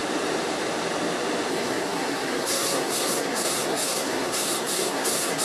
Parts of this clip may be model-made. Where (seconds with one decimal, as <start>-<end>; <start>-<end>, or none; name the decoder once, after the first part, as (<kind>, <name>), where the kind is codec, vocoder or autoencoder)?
1.5-5.4 (codec, SNAC)